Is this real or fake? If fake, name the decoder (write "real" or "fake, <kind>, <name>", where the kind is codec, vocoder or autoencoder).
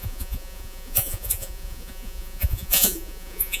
fake, vocoder, Vocos